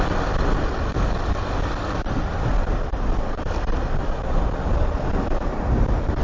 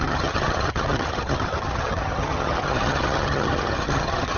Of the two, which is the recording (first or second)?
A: first